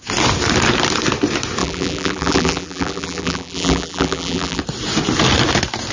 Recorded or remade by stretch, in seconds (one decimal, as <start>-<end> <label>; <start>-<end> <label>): 0.0-1.6 recorded; 1.6-4.6 remade; 4.6-5.9 recorded